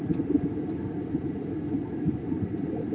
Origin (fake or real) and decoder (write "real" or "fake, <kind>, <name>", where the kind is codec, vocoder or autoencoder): fake, vocoder, BigVGAN v2